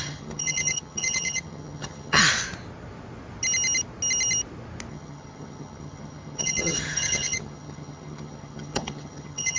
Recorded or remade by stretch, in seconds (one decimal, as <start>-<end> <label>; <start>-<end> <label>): 0.0-2.2 remade; 2.2-4.9 recorded; 4.9-9.6 remade